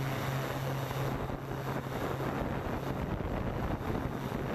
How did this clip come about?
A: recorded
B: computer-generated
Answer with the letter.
A